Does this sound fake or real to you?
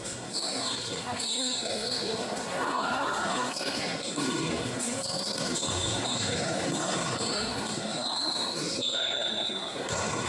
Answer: fake